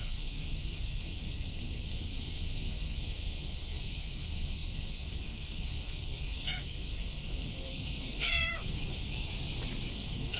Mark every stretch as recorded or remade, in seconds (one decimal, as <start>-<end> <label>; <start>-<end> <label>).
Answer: 0.0-9.3 remade; 9.3-9.9 recorded; 9.9-10.4 remade